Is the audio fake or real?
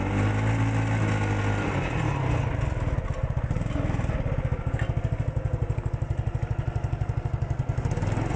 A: real